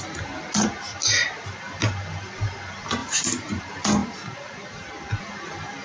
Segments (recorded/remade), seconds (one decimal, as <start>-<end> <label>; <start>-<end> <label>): 0.0-3.0 recorded; 3.0-3.6 remade; 3.6-5.8 recorded